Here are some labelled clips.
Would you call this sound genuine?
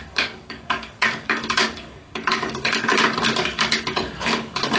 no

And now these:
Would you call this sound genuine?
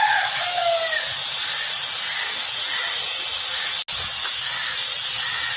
yes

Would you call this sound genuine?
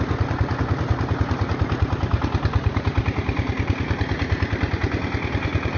yes